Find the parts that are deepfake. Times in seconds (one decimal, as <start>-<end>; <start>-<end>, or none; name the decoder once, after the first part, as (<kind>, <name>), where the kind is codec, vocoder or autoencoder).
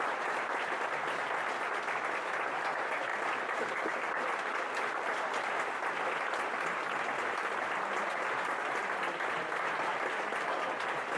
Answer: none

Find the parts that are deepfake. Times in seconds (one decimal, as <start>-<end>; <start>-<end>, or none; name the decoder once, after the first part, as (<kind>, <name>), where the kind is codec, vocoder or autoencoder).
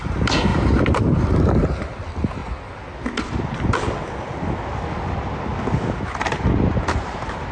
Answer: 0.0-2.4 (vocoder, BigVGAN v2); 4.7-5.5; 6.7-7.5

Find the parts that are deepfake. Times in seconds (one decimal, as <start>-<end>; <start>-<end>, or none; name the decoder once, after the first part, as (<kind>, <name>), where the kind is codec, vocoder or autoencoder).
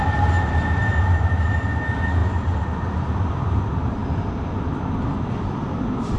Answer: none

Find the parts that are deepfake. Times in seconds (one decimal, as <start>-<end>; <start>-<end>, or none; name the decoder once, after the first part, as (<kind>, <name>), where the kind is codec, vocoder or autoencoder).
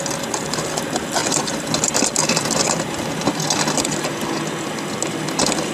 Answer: 1.2-2.1 (vocoder, BigVGAN v2)